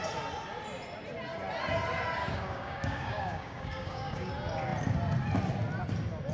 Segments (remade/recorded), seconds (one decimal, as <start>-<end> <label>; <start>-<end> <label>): 0.0-2.2 recorded; 2.2-4.3 remade; 4.3-6.3 recorded